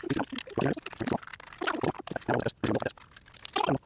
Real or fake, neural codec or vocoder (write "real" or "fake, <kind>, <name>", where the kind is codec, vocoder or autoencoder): real